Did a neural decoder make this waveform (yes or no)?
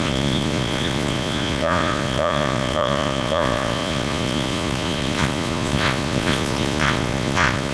yes